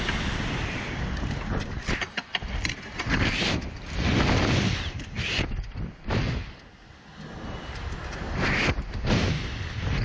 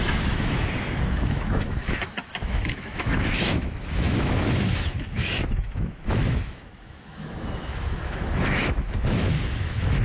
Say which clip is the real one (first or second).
first